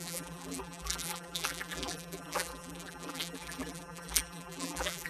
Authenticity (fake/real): fake